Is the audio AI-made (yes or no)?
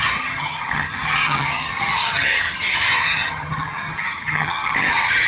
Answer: yes